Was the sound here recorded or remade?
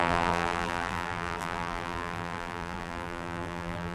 remade